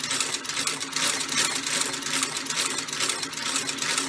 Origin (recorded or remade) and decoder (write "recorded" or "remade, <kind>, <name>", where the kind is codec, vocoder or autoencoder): recorded